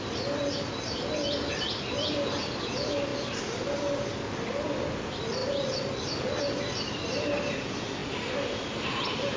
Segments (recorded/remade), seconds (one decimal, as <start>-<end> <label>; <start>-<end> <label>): 0.0-5.4 remade; 5.4-6.4 recorded; 6.4-9.4 remade